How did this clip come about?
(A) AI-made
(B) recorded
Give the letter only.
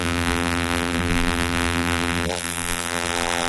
A